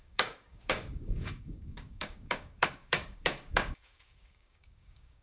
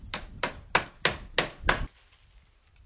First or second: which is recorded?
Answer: second